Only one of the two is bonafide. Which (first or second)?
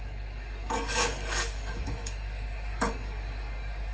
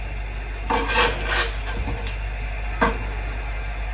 second